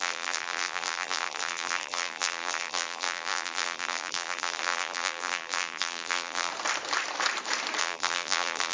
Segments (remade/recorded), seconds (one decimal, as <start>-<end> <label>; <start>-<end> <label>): 0.0-6.5 remade; 6.5-7.8 recorded; 7.8-8.7 remade